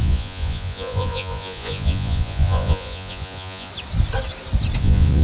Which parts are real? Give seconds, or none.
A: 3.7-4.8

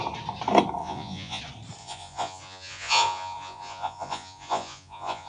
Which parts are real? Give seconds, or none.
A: 0.0-0.8; 1.4-1.8

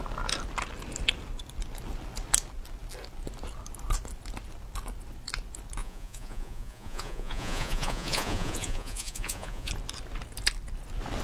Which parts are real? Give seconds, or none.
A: 0.0-5.8; 9.7-11.2